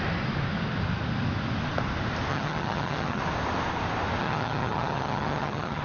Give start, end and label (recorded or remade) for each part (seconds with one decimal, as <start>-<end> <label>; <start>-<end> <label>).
0.0-2.3 recorded; 2.3-3.2 remade; 3.2-4.2 recorded; 4.2-5.8 remade